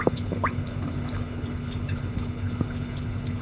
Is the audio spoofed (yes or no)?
yes